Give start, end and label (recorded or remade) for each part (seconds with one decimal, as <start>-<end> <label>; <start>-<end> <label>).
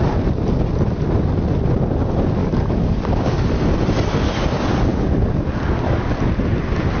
0.0-2.4 recorded; 2.4-3.5 remade; 3.5-4.9 recorded; 4.9-6.1 remade; 6.1-7.0 recorded